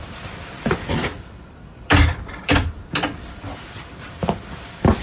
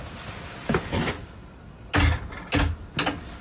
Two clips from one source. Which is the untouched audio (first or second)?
second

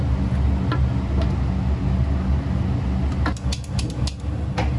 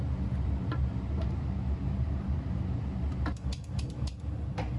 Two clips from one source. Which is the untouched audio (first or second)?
first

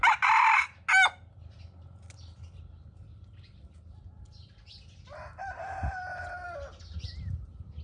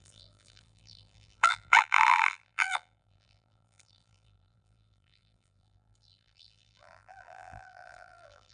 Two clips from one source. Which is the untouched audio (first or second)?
first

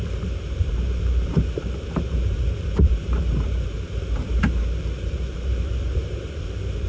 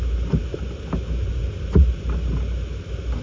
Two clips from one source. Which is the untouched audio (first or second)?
second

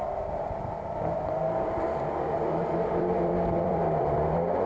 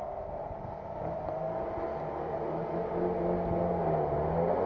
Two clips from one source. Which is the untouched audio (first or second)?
second